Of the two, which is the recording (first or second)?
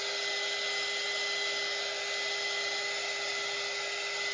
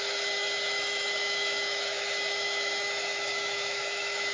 first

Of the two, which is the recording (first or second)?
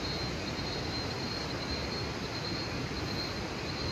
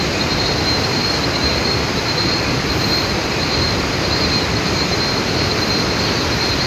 first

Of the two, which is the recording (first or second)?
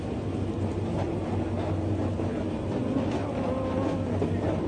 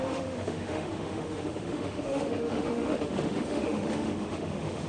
first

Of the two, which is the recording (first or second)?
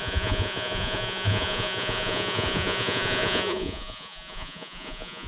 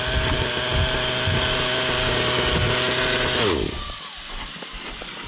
second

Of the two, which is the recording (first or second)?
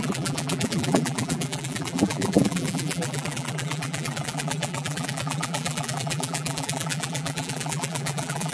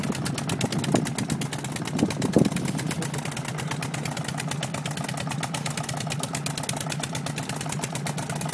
second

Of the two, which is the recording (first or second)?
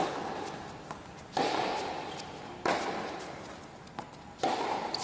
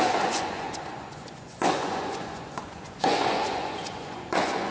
first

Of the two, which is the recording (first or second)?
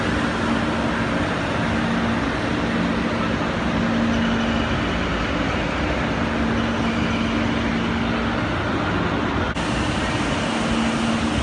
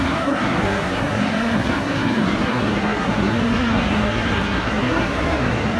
first